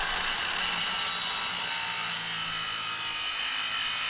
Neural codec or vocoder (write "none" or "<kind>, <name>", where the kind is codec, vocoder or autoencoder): none